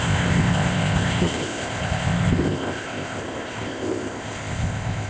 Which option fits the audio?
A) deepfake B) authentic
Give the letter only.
A